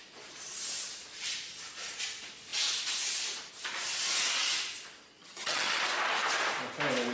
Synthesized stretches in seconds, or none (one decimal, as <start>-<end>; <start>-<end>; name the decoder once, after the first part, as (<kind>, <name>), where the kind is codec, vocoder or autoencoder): 5.2-5.8 (vocoder, HiFi-GAN)